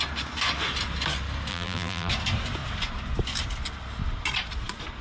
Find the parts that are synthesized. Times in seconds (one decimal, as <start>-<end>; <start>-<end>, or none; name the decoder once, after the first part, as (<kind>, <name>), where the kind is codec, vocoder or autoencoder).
1.5-2.1 (vocoder, BigVGAN v2)